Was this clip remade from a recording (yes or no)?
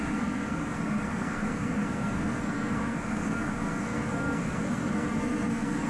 yes